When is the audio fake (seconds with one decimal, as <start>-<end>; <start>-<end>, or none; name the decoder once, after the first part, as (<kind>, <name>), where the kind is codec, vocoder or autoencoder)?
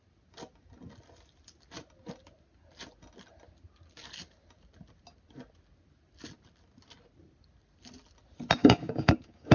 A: 8.6-9.5 (codec, DAC)